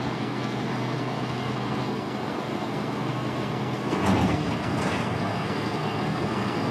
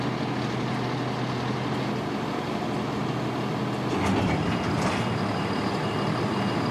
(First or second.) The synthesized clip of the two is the first